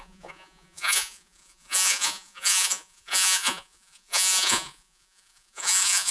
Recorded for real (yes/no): no